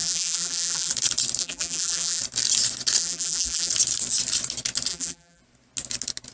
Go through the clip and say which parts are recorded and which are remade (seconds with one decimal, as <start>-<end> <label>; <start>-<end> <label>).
0.0-0.9 remade; 0.9-1.4 recorded; 1.4-2.2 remade; 2.2-3.0 recorded; 3.0-3.7 remade; 3.7-4.9 recorded; 4.9-5.4 remade; 5.4-6.3 recorded